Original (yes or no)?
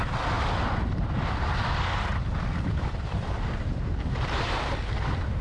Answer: yes